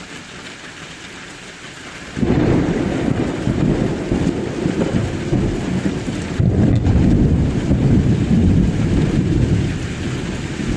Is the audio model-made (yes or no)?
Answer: yes